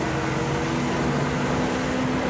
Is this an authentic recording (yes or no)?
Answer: yes